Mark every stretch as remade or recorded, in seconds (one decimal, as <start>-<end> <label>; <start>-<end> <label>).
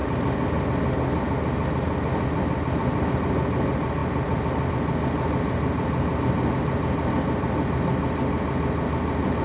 0.0-9.4 recorded